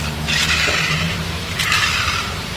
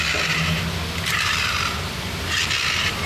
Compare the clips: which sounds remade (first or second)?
first